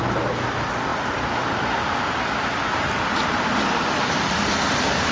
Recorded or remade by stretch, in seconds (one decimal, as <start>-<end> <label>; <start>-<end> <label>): 0.0-5.1 recorded